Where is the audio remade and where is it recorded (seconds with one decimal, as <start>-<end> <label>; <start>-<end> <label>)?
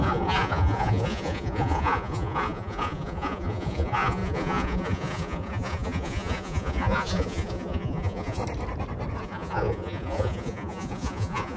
0.0-8.4 remade; 8.4-9.2 recorded; 9.2-11.6 remade